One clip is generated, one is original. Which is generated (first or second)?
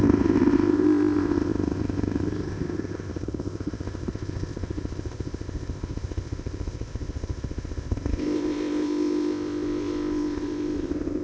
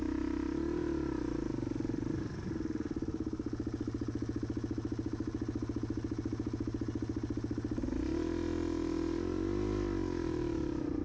first